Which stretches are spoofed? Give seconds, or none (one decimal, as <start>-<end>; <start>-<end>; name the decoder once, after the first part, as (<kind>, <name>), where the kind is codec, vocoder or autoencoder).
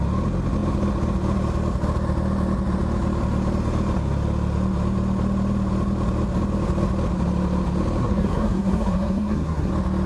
8.0-9.7 (codec, SNAC)